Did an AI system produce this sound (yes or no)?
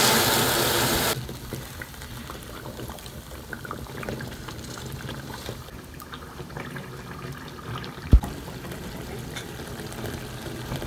yes